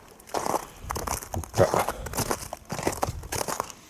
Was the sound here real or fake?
real